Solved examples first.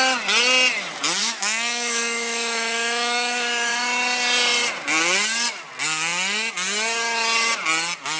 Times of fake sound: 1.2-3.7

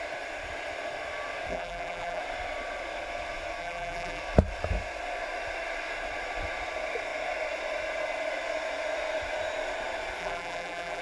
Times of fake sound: 1.5-2.2; 3.6-4.2; 10.2-11.0

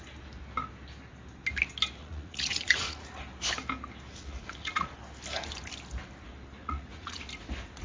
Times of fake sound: 2.0-3.2; 4.1-4.9; 6.6-7.2